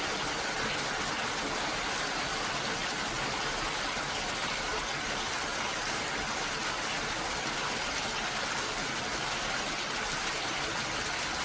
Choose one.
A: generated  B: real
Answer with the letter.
B